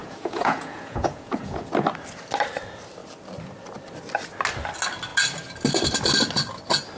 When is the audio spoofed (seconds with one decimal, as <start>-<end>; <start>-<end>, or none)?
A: 0.0-1.7

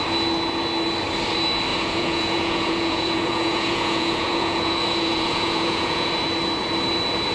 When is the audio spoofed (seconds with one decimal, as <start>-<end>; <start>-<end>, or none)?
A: 1.7-6.1

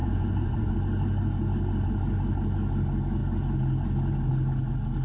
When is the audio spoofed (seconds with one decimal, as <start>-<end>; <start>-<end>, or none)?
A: 0.0-0.7